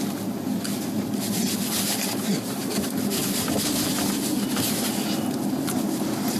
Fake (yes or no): no